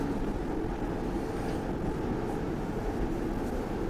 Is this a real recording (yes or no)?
yes